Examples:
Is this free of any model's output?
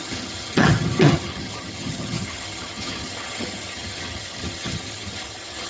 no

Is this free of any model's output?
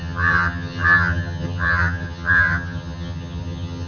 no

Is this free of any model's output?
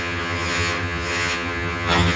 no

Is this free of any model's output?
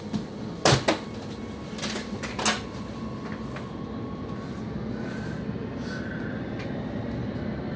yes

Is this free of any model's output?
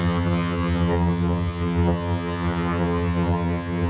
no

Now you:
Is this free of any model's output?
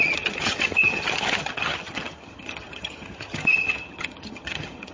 no